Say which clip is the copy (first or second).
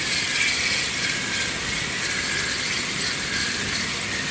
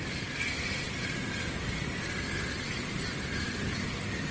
second